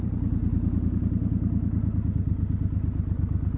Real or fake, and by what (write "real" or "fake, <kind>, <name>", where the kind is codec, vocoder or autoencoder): real